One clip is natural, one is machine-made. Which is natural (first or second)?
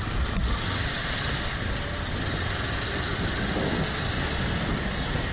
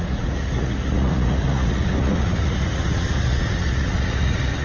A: first